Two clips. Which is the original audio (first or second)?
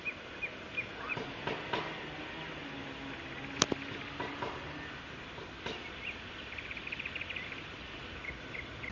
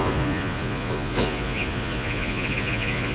first